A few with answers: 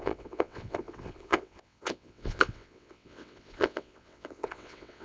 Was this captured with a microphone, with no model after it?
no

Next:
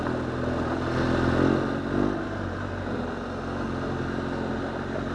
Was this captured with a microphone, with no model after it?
yes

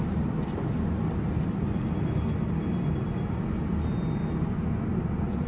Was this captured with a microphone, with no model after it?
yes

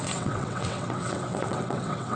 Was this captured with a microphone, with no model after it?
no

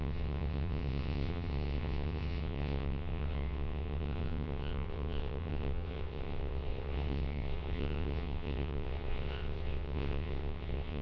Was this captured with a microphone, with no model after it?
no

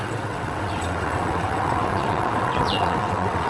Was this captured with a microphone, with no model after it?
no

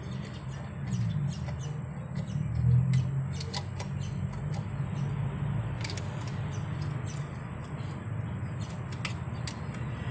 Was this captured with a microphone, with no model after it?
yes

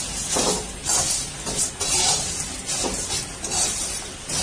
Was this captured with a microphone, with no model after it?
yes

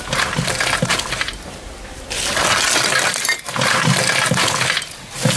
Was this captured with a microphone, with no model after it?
yes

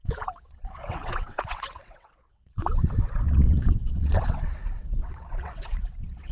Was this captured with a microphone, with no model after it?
no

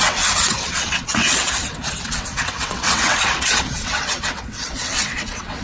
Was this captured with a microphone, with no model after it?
no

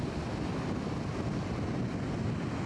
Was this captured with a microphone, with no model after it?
yes